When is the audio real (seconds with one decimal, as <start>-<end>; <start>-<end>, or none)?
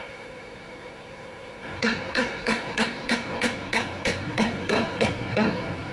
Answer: none